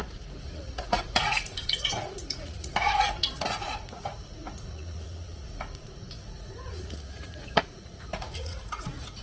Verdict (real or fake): fake